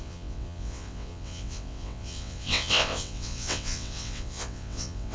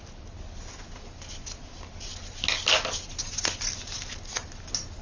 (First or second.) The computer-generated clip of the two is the first